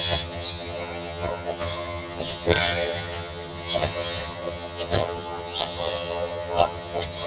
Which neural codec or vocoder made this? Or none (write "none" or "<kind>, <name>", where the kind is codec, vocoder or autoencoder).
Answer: vocoder, HiFi-GAN